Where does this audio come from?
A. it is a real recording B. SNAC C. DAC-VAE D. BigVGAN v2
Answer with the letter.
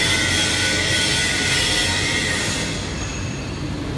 A